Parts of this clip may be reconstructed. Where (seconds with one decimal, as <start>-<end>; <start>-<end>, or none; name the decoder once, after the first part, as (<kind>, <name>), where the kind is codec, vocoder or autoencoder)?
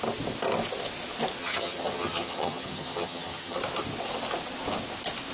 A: 1.4-3.6 (vocoder, HiFi-GAN)